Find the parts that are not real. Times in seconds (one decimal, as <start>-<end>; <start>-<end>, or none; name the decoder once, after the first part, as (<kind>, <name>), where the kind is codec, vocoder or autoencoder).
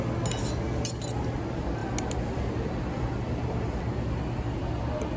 none